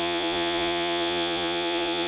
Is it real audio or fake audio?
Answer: fake